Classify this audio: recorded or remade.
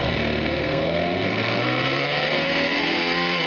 remade